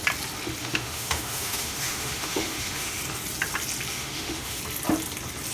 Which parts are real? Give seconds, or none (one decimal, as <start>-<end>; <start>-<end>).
0.0-0.6; 3.0-3.9; 4.6-5.5